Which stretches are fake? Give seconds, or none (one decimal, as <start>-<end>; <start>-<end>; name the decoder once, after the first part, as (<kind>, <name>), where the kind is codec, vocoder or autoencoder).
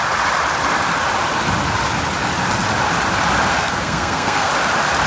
3.5-4.5 (codec, SNAC)